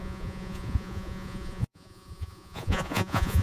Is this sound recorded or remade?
remade